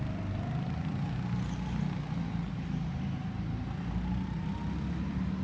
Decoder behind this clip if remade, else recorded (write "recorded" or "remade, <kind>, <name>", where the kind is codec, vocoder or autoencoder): recorded